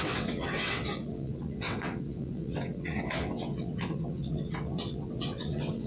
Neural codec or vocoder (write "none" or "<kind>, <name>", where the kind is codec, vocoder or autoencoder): vocoder, WaveNeXt